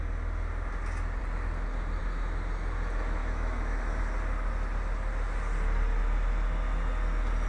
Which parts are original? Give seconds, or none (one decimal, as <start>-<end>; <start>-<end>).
0.0-3.2; 4.0-7.5